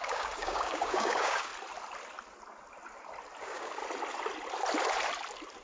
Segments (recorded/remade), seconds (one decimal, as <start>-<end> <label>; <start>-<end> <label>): 0.0-1.5 remade; 1.5-3.4 recorded; 3.4-3.8 remade; 3.8-5.6 recorded